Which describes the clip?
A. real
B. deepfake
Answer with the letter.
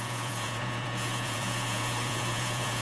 B